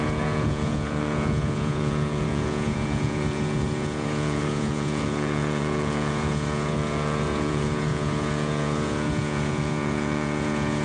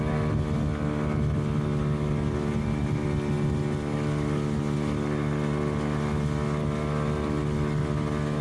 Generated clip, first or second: first